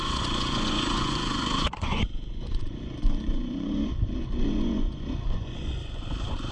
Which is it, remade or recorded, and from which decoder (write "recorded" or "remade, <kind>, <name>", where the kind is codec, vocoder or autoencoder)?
remade, vocoder, Vocos